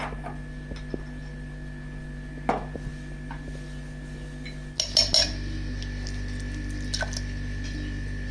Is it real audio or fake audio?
real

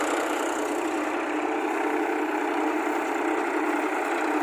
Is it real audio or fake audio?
real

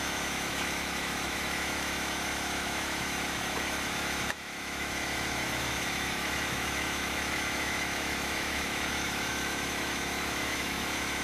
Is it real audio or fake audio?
fake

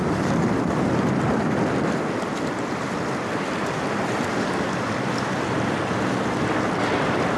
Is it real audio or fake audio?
real